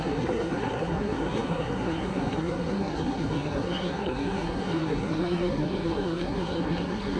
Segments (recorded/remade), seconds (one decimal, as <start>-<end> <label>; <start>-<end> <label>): 0.0-7.2 remade